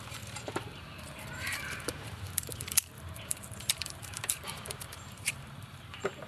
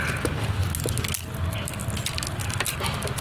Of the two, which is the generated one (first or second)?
first